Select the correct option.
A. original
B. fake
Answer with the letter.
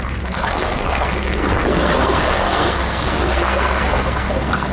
B